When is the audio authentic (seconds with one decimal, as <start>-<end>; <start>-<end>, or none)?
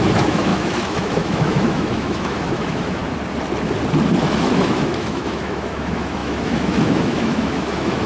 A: 3.0-4.2